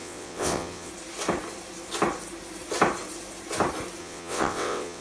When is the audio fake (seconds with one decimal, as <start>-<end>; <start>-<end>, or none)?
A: 0.0-0.9; 4.0-5.0